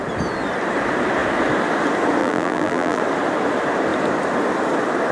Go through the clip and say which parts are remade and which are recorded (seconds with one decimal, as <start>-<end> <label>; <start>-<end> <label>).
0.0-2.2 recorded; 2.2-3.0 remade; 3.0-5.1 recorded